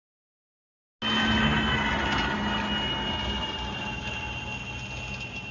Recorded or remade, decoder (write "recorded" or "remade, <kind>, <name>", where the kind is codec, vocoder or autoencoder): recorded